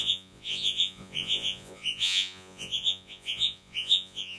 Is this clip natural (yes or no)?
no